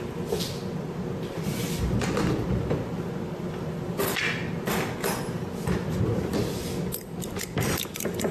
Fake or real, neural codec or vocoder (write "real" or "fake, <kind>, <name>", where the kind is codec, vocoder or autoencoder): real